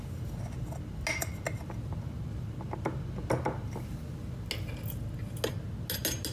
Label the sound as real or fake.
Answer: real